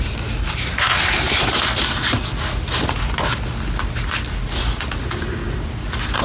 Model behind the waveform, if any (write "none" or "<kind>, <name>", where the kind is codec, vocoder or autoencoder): none